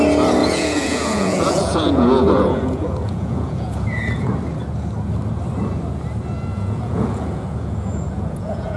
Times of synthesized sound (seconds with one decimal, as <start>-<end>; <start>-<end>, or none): 0.4-4.3; 6.5-8.8